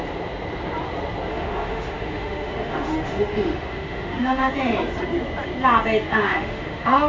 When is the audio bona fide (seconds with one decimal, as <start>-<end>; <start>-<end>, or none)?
0.0-1.3; 4.5-6.1